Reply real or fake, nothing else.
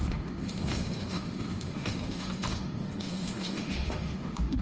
fake